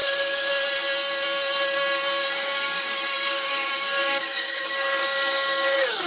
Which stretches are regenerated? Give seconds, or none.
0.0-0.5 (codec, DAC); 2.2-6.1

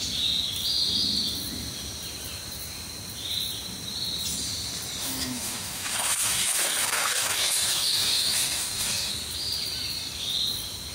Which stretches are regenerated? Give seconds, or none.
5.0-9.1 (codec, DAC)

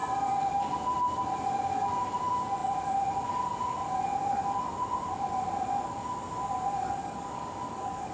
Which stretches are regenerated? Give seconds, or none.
7.0-8.1 (codec, DAC)

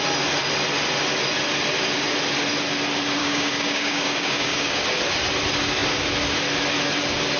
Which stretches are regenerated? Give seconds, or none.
3.2-4.8 (codec, DAC)

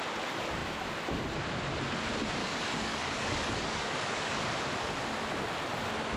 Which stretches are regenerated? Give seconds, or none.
2.4-4.4 (codec, DAC)

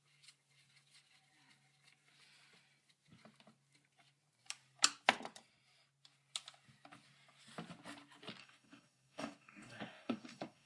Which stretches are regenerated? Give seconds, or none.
8.4-10.7 (codec, DAC)

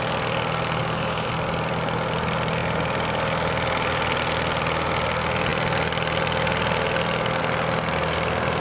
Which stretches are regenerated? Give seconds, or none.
0.8-1.3 (codec, DAC)